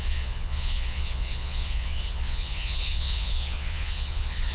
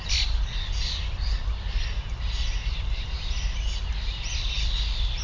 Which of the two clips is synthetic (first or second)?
first